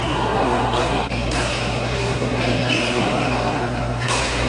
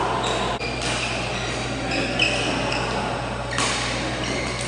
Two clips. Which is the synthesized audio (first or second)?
first